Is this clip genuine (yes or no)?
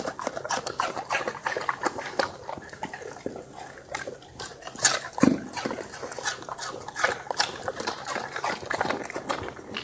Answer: yes